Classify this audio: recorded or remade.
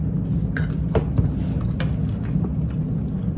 recorded